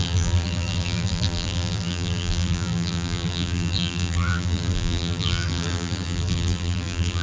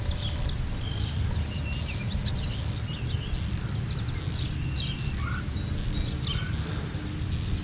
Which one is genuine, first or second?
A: second